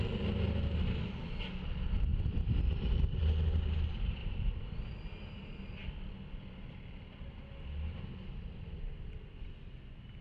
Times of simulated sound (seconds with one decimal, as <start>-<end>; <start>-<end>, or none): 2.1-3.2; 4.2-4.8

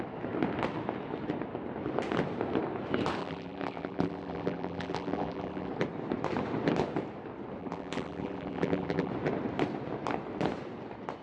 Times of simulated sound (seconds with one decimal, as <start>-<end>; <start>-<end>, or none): 3.2-5.7; 7.6-9.1

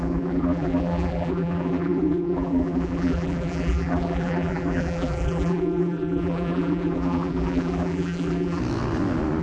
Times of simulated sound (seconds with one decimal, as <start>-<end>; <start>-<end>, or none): 0.0-8.6

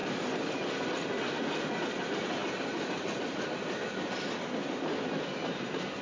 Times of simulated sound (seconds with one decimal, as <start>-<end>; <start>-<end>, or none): 0.0-0.8; 2.4-4.3; 5.4-6.0

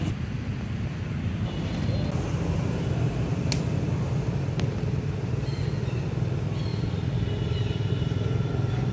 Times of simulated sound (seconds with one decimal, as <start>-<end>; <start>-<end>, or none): none

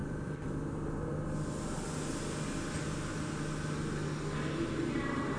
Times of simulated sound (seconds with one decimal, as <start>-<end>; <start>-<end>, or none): 0.0-1.0